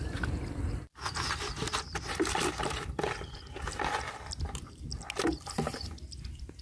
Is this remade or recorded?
recorded